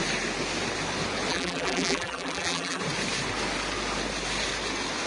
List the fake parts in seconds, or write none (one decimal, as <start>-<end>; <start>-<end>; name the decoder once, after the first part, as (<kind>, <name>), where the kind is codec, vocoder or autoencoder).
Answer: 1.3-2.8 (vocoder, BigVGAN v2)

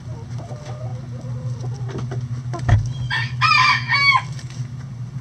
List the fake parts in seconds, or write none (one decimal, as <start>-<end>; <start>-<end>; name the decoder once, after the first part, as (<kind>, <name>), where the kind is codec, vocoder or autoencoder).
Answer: none

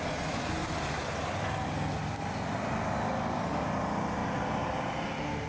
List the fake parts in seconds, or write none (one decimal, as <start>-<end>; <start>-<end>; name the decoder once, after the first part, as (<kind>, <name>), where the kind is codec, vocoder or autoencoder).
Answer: 0.6-1.3 (vocoder, BigVGAN v2); 4.2-4.9